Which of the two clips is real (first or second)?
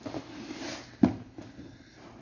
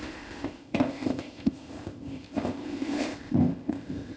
first